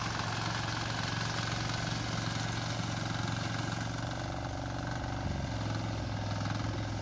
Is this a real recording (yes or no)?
yes